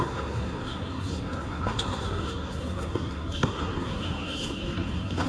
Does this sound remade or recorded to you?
remade